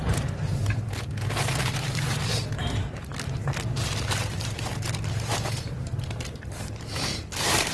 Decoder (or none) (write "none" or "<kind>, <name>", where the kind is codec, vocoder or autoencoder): vocoder, BigVGAN v2